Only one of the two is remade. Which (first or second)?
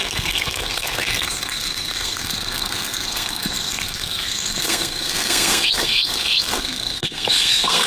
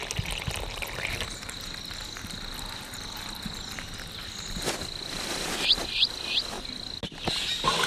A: first